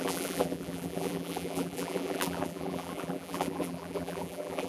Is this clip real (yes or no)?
no